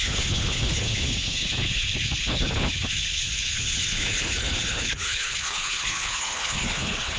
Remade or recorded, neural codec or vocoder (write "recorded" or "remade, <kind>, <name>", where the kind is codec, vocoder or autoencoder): remade, codec, HILCodec